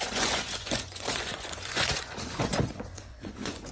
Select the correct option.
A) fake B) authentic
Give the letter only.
A